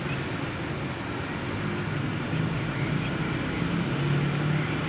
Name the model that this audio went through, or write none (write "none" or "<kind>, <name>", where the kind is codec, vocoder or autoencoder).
none